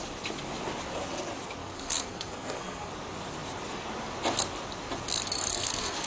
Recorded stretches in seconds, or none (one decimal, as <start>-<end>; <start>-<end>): 0.0-1.6; 2.9-5.5